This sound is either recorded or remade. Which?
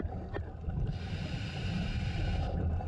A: recorded